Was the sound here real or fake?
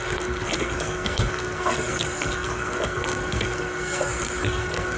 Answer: fake